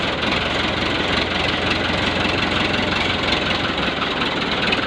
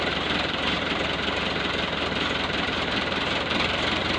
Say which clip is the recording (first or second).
first